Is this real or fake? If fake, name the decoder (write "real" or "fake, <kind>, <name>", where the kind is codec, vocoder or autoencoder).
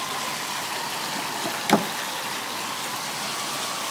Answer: real